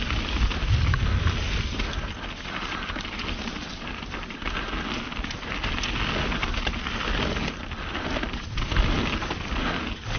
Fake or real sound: real